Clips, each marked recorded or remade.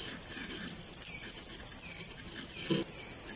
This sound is recorded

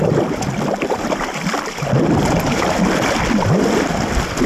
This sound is recorded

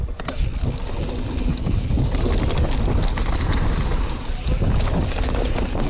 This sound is recorded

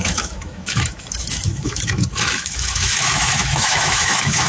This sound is remade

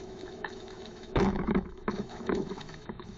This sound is remade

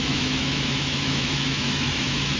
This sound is remade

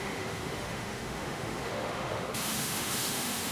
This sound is remade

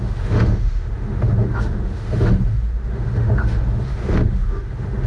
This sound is remade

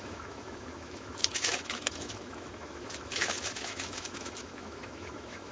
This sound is remade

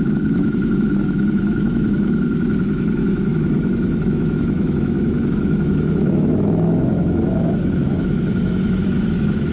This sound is remade